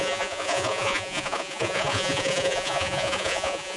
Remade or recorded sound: remade